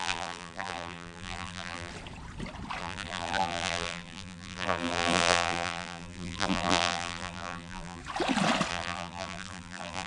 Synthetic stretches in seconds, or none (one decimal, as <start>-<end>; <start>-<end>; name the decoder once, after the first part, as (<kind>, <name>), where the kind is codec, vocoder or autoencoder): 0.0-1.9 (vocoder, BigVGAN v2); 2.8-8.0; 8.7-10.1